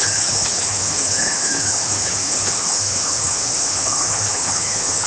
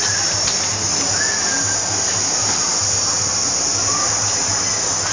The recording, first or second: second